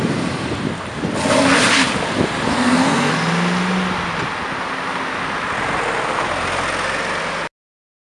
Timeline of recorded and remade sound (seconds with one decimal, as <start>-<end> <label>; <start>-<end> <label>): 0.0-2.5 recorded; 2.5-3.1 remade; 3.1-8.2 recorded